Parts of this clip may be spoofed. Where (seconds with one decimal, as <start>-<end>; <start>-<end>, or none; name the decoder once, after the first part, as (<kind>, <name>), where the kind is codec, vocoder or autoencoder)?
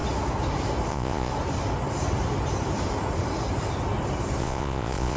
0.9-1.3 (vocoder, Vocos); 4.4-5.2